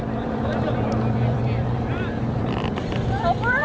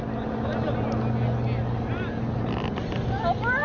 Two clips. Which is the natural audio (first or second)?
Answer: second